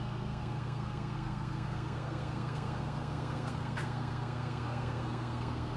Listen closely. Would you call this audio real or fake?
fake